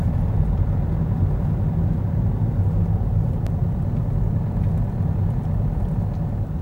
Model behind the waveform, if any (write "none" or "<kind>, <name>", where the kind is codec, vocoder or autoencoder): none